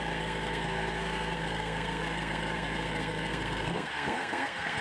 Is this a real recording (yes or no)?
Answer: no